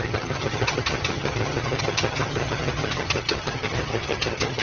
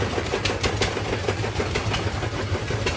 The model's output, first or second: first